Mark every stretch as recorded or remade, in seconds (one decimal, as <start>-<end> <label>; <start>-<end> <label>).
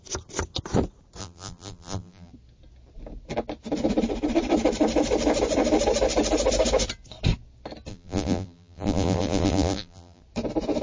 0.0-1.2 recorded; 1.2-2.3 remade; 2.3-7.9 recorded; 7.9-10.2 remade; 10.2-10.8 recorded